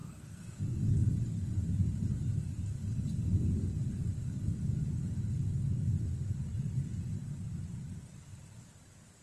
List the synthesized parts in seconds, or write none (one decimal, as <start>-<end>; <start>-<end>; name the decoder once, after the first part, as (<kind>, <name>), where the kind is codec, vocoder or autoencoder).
0.0-0.6 (codec, SNAC)